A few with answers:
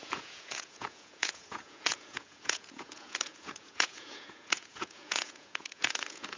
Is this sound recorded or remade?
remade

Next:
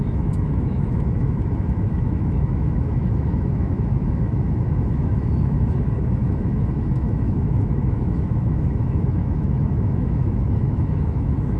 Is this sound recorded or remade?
remade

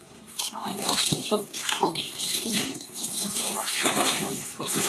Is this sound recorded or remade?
remade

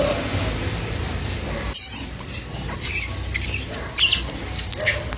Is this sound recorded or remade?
recorded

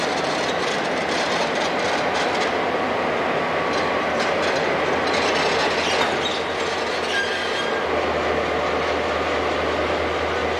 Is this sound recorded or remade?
recorded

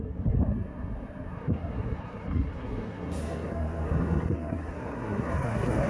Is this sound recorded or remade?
remade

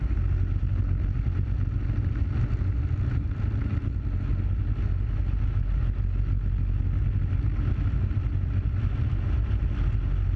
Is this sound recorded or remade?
recorded